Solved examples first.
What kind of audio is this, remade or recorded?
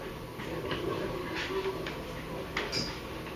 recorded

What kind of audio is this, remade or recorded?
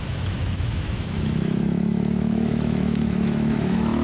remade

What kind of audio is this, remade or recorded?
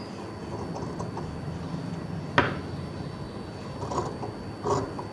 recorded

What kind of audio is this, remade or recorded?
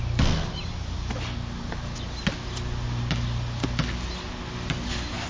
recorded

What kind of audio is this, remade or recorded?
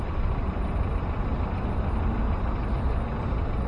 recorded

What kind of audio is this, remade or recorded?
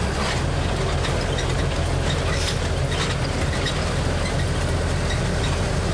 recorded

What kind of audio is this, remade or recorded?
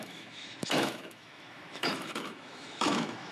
remade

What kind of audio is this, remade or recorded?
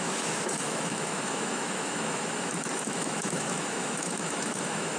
remade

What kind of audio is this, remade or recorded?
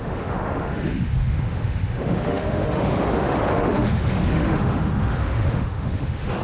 remade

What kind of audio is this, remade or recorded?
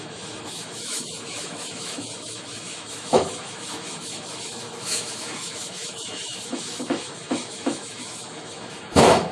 remade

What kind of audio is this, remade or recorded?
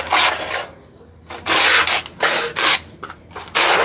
recorded